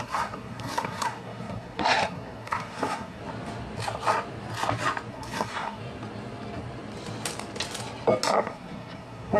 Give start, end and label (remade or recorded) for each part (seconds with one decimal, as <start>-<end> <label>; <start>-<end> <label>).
0.0-3.2 remade; 3.2-5.1 recorded; 5.1-5.8 remade; 5.8-8.3 recorded; 8.3-9.4 remade

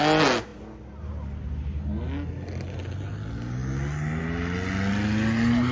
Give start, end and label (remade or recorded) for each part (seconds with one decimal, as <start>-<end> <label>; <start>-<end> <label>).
0.0-5.7 recorded

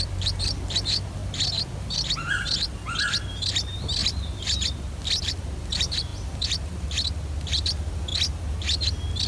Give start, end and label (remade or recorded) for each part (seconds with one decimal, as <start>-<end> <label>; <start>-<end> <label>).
0.0-8.1 remade; 8.1-9.3 recorded